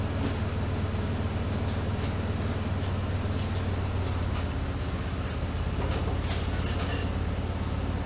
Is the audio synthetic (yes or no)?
no